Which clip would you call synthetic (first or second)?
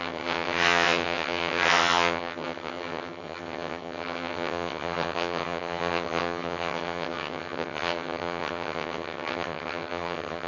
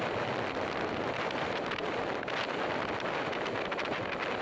first